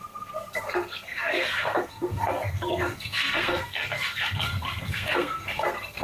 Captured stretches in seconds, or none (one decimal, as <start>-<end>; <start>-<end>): none